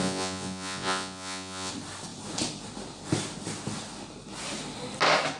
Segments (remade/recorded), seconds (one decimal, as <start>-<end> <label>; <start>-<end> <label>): 0.0-1.7 remade; 1.7-5.4 recorded